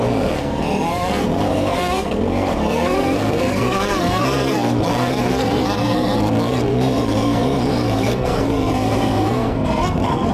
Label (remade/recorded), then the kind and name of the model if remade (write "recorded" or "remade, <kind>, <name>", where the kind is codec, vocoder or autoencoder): remade, codec, SNAC